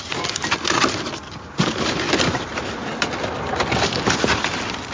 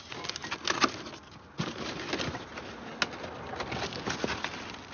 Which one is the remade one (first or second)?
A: first